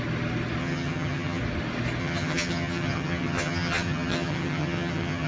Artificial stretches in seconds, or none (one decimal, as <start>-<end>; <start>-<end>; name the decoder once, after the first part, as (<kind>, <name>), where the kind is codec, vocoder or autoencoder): 0.6-1.4 (vocoder, HiFi-GAN); 2.0-5.3